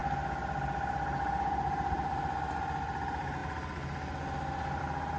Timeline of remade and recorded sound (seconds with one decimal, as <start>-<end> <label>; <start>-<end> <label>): 0.0-5.2 recorded